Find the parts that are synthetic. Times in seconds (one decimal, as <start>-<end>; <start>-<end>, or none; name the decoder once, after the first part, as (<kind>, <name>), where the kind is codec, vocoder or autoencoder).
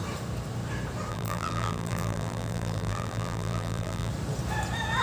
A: 1.1-4.1 (vocoder, BigVGAN v2)